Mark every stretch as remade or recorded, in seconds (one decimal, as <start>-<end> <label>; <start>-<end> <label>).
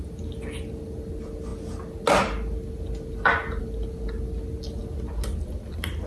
0.0-6.1 recorded